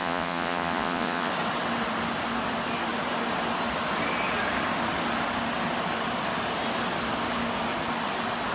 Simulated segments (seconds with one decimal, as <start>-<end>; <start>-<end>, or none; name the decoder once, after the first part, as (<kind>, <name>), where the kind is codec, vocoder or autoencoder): 0.0-1.3 (vocoder, Vocos)